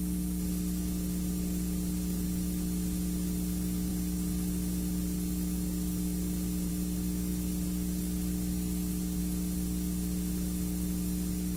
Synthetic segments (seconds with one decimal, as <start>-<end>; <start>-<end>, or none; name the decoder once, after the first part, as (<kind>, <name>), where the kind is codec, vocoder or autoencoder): none